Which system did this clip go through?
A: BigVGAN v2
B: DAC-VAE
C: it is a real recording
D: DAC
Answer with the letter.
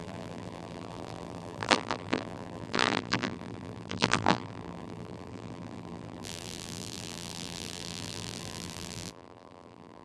A